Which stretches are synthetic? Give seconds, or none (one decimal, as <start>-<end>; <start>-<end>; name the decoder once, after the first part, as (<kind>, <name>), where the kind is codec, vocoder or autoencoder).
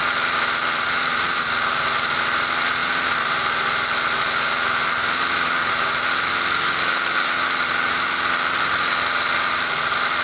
none